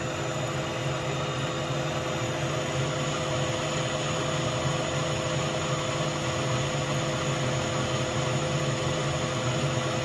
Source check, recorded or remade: recorded